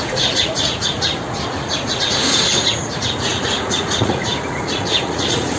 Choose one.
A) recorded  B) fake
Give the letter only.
B